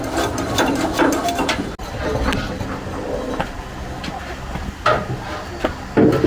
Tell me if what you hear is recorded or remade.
recorded